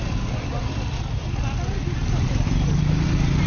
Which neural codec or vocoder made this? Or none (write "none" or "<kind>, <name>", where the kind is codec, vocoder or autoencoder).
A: none